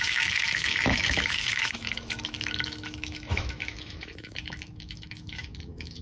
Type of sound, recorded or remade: remade